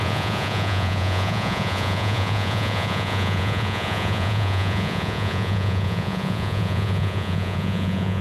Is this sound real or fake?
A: fake